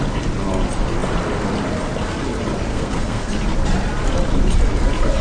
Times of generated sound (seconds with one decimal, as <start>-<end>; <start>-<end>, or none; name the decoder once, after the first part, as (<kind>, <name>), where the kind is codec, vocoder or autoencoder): 2.7-3.3 (codec, SNAC)